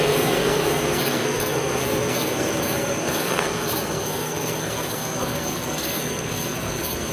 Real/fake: fake